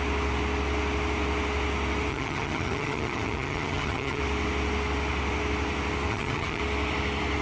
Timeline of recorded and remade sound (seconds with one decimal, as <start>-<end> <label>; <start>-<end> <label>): 0.0-2.1 recorded; 2.1-4.2 remade; 4.2-6.1 recorded; 6.1-6.6 remade; 6.6-7.4 recorded